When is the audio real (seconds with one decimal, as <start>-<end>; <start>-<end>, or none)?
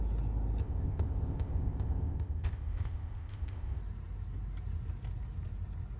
0.0-0.6; 3.8-6.0